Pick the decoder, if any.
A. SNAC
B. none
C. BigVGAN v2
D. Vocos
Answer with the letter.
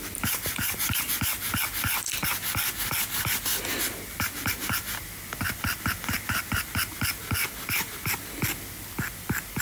B